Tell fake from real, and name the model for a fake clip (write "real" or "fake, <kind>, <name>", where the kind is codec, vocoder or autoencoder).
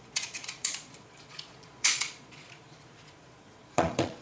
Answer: fake, vocoder, Vocos